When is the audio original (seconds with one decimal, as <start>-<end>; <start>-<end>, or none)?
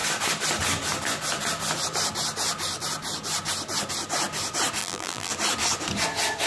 0.0-4.8; 5.3-6.5